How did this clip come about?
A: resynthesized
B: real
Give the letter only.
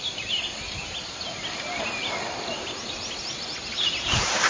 B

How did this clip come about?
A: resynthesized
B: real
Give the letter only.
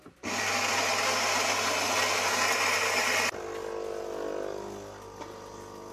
B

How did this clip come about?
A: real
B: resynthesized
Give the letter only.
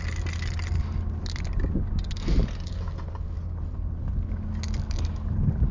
A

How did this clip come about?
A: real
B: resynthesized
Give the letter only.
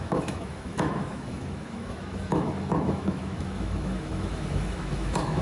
B